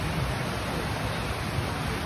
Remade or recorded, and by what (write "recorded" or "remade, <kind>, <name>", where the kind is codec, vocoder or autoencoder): recorded